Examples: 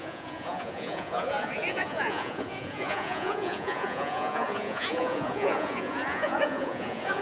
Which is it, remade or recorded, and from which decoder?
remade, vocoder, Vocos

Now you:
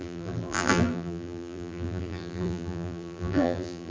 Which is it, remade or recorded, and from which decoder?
remade, vocoder, BigVGAN v2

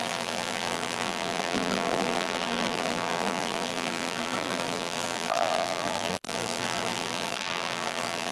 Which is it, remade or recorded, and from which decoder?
remade, vocoder, BigVGAN v2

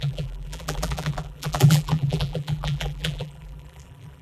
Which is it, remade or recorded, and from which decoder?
remade, vocoder, BigVGAN v2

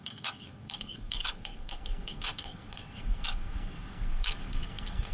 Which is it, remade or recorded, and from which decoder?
remade, codec, SNAC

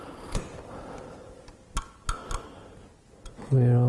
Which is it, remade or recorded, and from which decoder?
recorded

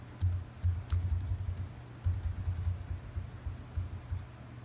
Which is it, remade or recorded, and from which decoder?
recorded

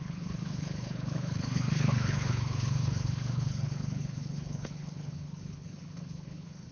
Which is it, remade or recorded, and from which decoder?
remade, codec, HILCodec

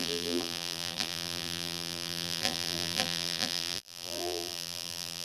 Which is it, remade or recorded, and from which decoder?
remade, vocoder, BigVGAN v2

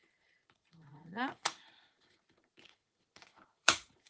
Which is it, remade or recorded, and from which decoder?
remade, vocoder, Vocos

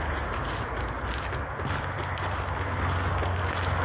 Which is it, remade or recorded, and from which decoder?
recorded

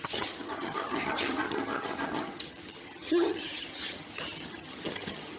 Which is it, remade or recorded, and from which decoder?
remade, vocoder, HiFi-GAN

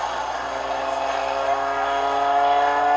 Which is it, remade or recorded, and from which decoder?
recorded